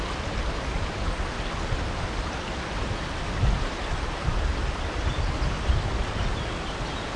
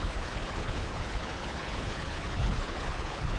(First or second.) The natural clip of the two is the first